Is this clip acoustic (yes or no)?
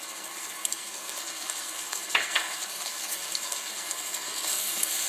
no